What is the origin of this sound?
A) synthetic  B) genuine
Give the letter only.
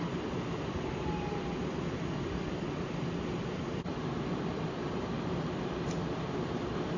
A